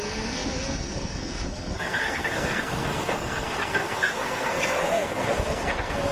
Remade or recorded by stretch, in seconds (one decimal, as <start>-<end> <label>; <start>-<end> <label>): 0.0-6.1 remade